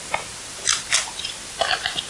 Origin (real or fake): real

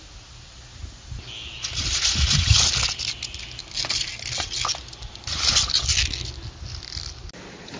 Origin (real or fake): real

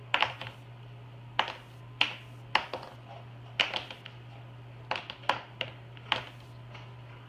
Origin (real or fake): real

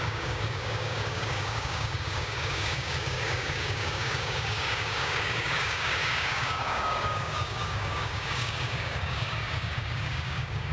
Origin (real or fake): fake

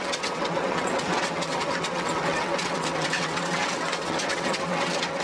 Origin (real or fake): fake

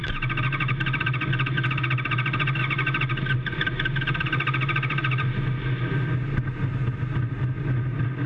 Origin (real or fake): real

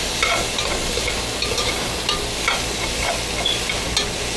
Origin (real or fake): real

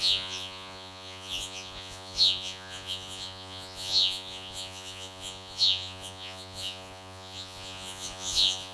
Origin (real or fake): fake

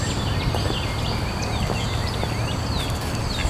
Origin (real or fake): real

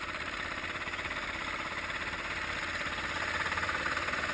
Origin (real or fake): real